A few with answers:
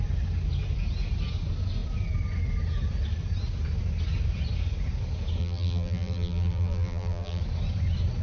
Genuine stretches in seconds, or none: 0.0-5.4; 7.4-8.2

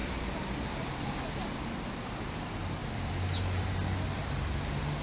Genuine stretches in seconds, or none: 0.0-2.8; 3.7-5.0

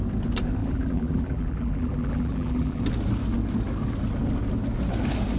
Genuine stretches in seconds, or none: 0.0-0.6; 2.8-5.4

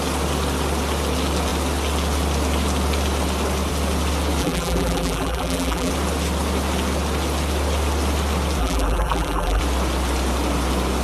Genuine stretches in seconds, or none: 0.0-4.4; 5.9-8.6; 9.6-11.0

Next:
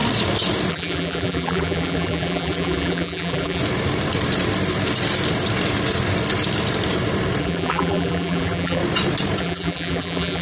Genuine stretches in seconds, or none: 0.0-0.7; 3.6-7.4; 8.8-9.4

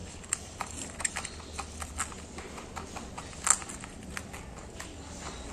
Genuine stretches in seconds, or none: 1.1-5.5